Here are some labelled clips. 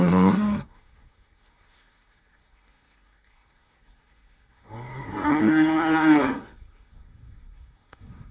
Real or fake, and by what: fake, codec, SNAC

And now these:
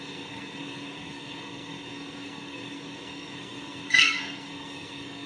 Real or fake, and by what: fake, codec, SNAC